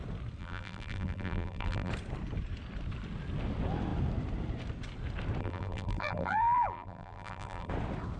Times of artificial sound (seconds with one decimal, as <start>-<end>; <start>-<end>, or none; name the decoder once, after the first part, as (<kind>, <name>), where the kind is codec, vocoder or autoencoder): 0.4-1.9 (vocoder, BigVGAN v2); 5.4-7.7